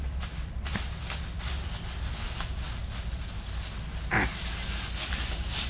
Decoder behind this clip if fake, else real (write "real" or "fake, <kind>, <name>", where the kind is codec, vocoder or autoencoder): real